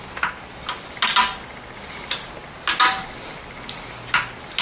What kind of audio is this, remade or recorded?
recorded